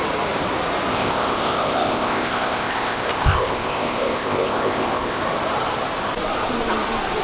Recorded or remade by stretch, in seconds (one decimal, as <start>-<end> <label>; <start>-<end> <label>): 0.0-0.9 recorded; 0.9-5.2 remade; 5.2-7.2 recorded